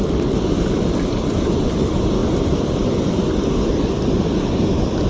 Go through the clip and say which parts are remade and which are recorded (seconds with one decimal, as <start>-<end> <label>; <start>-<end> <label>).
0.0-5.1 recorded